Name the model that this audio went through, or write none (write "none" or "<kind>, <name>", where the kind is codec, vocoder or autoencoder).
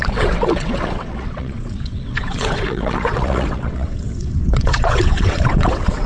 vocoder, WaveNeXt